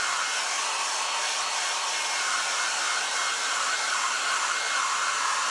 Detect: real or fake real